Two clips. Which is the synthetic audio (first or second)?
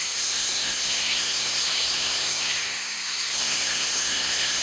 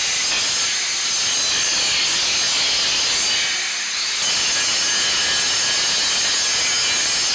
first